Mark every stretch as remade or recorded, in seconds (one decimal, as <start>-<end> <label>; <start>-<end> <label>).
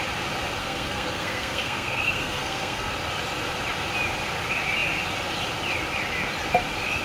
0.0-0.6 recorded; 0.6-2.9 remade; 2.9-7.0 recorded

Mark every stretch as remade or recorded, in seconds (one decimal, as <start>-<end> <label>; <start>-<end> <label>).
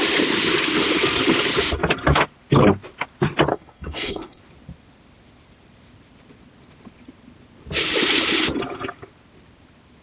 0.0-3.5 recorded; 3.5-4.4 remade; 4.4-10.0 recorded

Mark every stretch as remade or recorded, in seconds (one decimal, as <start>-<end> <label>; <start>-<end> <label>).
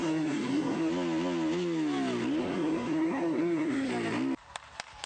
0.0-0.9 remade; 0.9-2.4 recorded; 2.4-3.9 remade; 3.9-5.1 recorded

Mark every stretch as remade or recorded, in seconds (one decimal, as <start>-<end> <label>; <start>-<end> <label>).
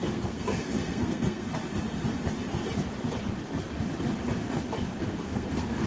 0.0-1.5 remade; 1.5-5.0 recorded; 5.0-5.9 remade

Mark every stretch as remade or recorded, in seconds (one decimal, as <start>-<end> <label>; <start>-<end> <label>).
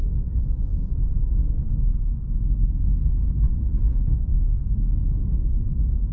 0.0-1.9 recorded; 1.9-3.1 remade; 3.1-3.8 recorded; 3.8-5.3 remade; 5.3-6.1 recorded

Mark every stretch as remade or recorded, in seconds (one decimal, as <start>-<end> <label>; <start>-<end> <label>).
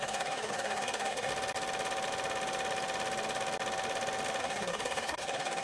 0.0-1.3 remade; 1.3-4.4 recorded; 4.4-5.6 remade